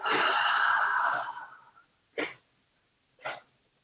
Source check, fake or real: real